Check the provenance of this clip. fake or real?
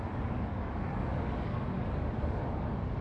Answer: fake